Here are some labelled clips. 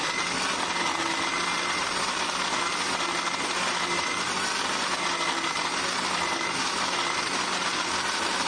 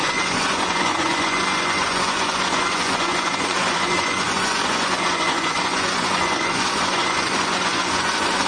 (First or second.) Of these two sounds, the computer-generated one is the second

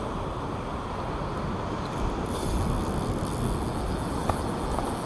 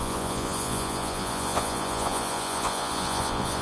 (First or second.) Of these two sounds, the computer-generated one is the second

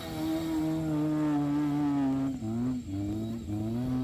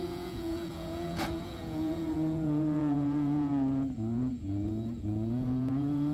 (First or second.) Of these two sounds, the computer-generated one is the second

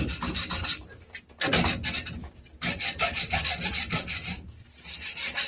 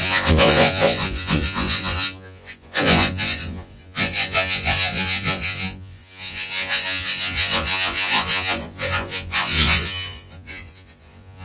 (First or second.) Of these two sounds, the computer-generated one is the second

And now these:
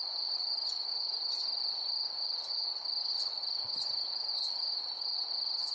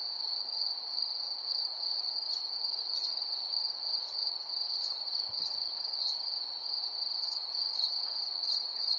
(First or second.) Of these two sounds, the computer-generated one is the second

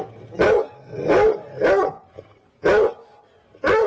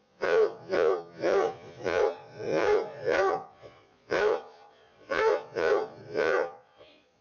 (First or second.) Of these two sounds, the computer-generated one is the second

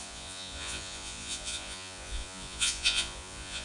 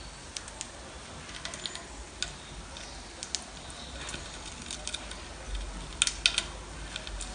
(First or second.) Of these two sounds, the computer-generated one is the first